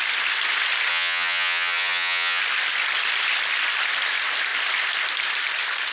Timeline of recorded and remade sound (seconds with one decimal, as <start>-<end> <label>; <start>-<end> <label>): 0.0-0.9 recorded; 0.9-2.4 remade; 2.4-5.9 recorded